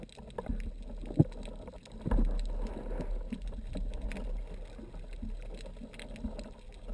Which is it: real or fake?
real